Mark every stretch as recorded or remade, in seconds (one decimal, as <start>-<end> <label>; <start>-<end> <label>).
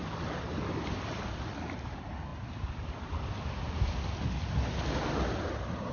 0.0-5.9 recorded